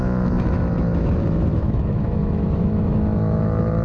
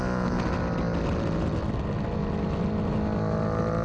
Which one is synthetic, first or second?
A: first